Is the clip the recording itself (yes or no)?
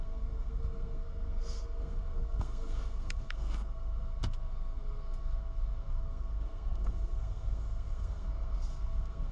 no